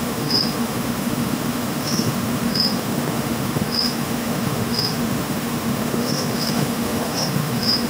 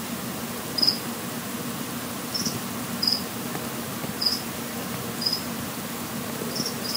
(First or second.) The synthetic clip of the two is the first